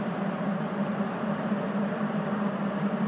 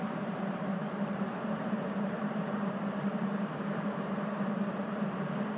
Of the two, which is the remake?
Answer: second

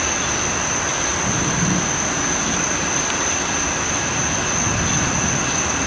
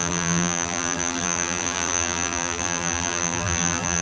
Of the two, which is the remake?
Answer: second